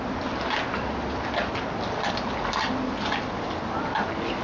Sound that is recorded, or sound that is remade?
recorded